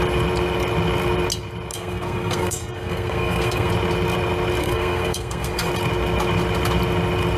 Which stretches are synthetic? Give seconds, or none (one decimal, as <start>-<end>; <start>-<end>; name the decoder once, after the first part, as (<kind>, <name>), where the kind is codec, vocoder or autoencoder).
1.7-3.7 (codec, SNAC); 4.6-5.7

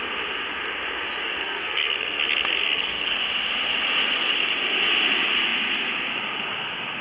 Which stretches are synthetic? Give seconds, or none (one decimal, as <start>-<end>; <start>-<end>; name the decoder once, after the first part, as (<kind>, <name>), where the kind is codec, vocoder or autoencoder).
1.4-2.2 (codec, SNAC); 2.6-3.2